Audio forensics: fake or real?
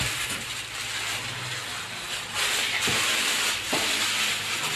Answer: real